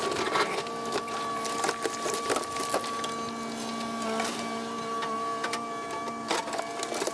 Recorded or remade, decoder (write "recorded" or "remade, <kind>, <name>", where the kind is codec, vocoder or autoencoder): recorded